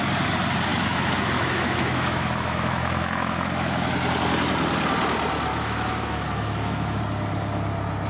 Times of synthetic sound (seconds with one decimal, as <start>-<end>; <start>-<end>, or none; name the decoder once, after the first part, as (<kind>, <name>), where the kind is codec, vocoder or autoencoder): 0.7-3.9 (autoencoder, DAC-VAE); 5.5-7.0